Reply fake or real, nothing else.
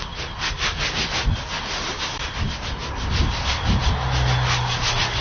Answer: real